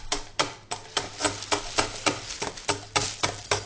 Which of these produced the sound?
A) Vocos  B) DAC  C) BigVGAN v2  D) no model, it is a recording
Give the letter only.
D